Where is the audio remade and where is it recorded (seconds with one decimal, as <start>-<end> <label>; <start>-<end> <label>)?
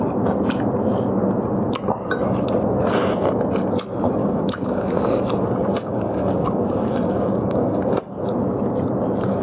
0.0-4.2 recorded; 4.2-5.2 remade; 5.2-5.7 recorded; 5.7-7.8 remade; 7.8-9.4 recorded